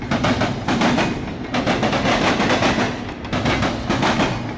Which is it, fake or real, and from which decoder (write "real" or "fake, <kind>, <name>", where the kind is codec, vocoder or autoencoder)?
real